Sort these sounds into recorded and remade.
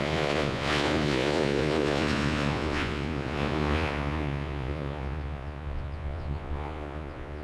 remade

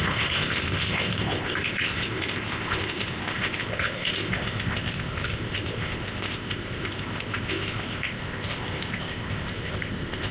remade